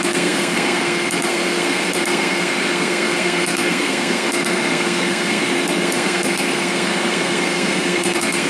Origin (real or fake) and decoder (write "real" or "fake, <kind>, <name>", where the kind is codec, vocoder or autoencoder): fake, codec, SNAC